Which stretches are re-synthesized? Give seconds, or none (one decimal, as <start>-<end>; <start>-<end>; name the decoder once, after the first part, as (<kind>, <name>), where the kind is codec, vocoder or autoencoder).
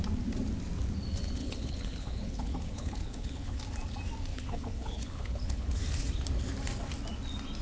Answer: 1.4-3.6 (codec, HILCodec); 4.3-5.8